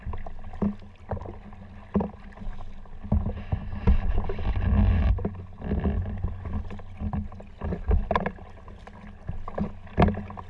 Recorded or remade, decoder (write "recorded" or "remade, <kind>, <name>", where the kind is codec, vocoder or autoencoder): recorded